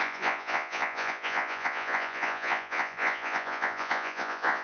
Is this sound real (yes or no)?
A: no